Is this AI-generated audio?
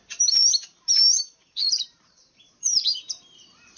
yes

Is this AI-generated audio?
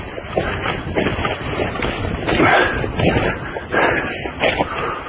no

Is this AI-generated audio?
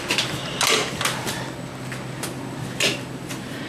no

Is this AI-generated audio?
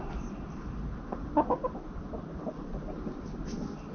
no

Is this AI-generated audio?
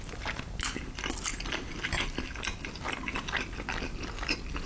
no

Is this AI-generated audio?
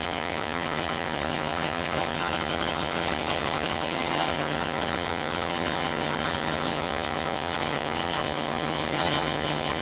yes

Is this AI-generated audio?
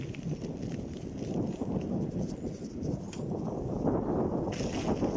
no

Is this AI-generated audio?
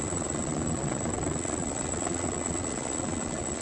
yes